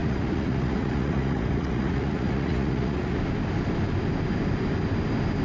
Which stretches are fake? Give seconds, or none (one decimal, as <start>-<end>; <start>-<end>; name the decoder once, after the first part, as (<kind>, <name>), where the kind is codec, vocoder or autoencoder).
0.0-3.2 (vocoder, Vocos)